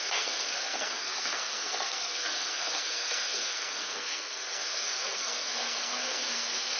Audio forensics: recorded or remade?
remade